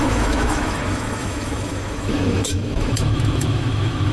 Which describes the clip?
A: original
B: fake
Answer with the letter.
B